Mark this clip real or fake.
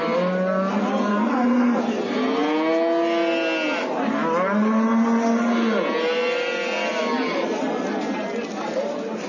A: real